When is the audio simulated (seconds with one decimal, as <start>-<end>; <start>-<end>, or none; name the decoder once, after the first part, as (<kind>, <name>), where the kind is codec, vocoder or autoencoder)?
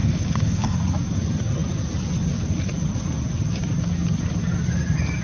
0.0-0.8 (codec, DAC)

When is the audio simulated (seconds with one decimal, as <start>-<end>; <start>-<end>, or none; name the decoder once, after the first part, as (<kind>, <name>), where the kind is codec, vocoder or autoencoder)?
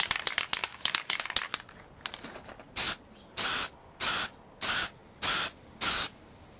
0.7-1.2 (codec, DAC)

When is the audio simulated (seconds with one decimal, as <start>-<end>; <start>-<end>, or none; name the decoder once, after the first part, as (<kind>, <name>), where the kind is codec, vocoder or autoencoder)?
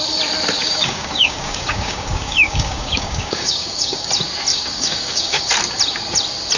0.6-4.1 (codec, DAC); 4.5-5.5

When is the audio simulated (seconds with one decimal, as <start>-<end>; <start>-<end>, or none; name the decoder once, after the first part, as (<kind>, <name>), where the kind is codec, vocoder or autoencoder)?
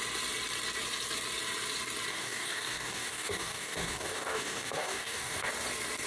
2.1-5.5 (codec, DAC)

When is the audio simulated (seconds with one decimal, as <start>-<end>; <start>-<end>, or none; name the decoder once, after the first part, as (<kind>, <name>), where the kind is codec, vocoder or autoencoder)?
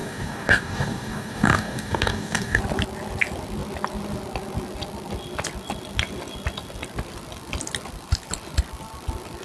0.0-2.6 (codec, DAC)